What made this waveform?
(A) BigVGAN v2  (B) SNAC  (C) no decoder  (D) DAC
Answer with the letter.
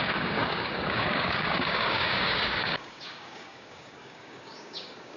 D